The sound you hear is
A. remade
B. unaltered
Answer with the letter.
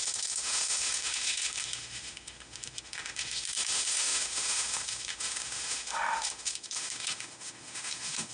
A